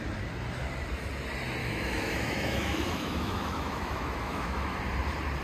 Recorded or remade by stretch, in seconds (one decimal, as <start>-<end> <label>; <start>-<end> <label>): 0.0-1.6 recorded; 1.6-4.8 remade; 4.8-5.4 recorded